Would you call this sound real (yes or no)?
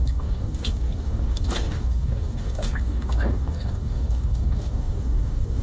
no